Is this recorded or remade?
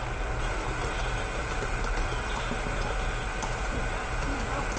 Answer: recorded